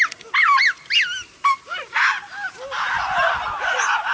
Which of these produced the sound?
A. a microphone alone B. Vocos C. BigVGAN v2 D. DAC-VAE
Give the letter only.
A